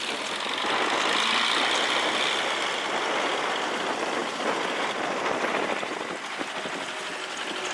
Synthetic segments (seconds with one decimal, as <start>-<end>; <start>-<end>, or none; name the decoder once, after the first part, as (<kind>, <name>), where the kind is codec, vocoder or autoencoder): none